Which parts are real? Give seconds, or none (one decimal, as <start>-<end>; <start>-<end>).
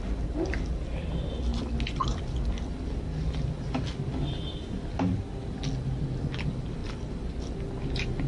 0.0-8.3